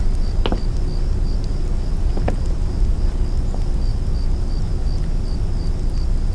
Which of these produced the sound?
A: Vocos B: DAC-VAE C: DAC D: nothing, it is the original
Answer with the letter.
D